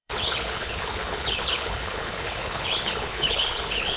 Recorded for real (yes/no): no